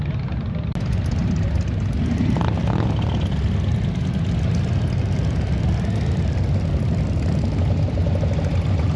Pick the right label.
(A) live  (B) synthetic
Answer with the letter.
A